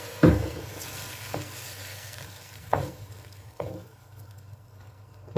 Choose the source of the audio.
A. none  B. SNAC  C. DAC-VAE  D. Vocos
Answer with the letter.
B